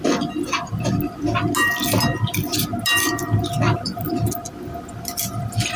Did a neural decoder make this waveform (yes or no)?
no